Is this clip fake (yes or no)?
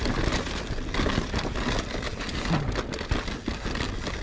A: no